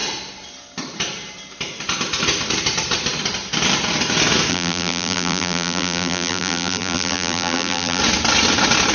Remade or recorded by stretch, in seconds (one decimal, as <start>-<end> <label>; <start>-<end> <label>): 0.0-4.5 recorded; 4.5-8.0 remade; 8.0-8.9 recorded